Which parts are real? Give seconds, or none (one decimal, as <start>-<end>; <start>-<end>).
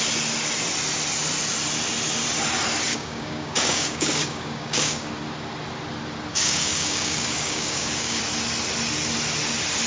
0.0-2.9; 5.1-6.3; 8.2-9.9